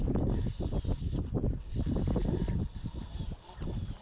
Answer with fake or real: real